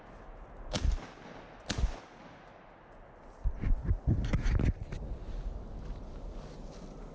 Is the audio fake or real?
real